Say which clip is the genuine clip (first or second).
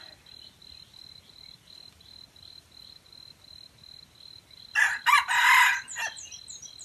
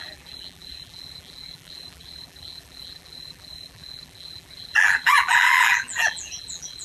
first